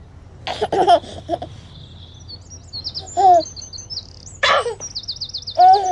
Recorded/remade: recorded